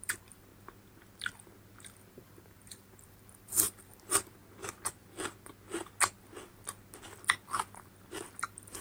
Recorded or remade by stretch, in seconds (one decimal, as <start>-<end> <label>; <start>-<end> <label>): 0.0-0.5 remade; 0.5-2.1 recorded; 2.1-4.4 remade; 4.4-8.4 recorded; 8.4-8.8 remade